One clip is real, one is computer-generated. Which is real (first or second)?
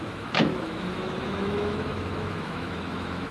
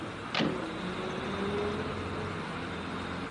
second